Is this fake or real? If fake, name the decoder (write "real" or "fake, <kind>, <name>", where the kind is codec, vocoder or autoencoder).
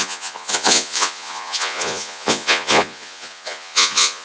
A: fake, vocoder, Vocos